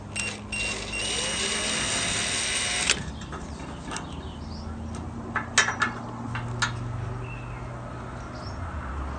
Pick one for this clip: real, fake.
real